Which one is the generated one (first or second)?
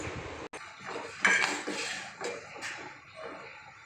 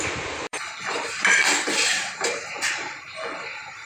second